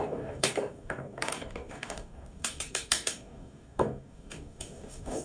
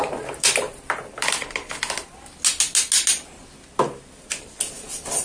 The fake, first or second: first